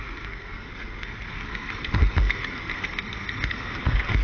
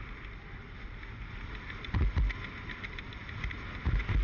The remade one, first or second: first